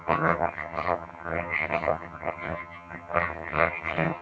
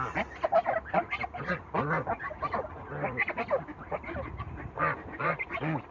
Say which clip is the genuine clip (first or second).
second